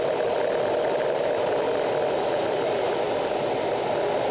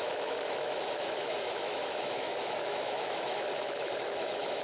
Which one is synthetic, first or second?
second